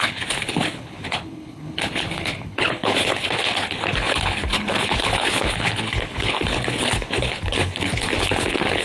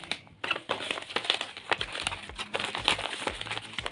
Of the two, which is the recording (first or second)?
second